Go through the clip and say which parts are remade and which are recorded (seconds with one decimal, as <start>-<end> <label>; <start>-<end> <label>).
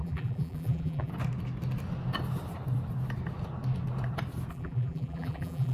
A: 0.0-1.1 remade; 1.1-4.5 recorded; 4.5-5.7 remade